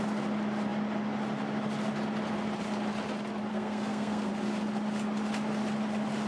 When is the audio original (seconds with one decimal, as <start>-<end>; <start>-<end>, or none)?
0.0-3.5; 4.3-6.3